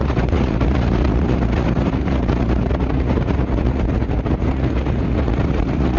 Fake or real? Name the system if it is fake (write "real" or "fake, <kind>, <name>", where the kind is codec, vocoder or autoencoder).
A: fake, vocoder, Vocos